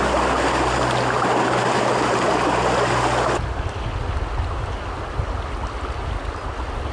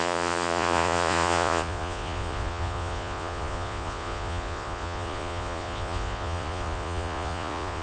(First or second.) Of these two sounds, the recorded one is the first